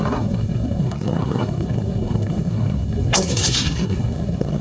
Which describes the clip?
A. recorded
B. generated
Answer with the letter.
B